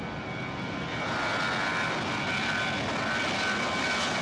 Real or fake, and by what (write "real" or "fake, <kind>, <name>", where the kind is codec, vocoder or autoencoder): real